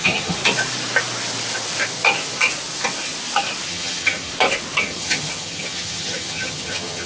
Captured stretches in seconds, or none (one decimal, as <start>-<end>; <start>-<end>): 0.4-3.7; 4.3-4.8